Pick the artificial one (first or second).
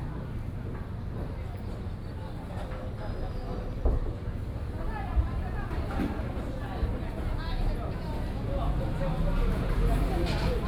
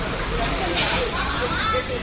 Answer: second